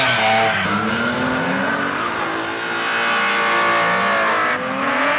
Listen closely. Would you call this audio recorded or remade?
recorded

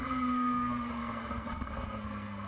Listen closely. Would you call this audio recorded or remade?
remade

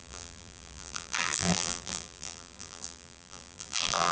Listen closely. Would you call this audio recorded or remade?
remade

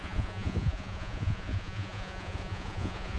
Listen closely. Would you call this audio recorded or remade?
remade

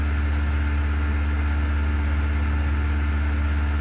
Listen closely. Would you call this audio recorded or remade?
recorded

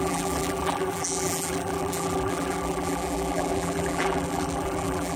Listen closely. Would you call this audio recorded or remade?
remade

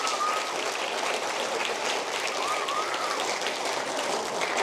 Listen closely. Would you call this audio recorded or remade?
recorded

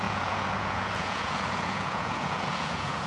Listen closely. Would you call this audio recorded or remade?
remade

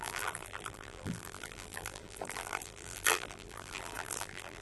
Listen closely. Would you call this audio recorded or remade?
remade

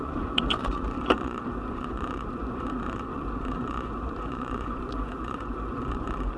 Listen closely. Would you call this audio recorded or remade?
remade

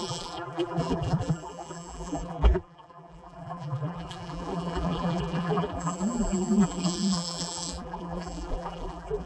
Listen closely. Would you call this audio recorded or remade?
remade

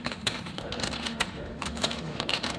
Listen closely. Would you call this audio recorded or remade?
remade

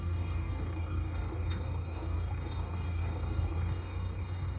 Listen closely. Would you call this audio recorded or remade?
remade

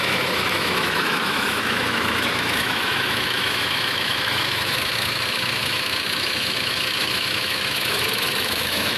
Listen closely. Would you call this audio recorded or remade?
remade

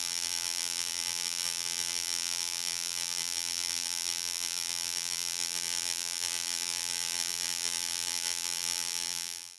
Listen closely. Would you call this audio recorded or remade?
remade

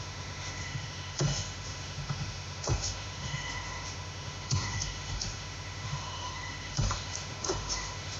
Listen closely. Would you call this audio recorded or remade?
remade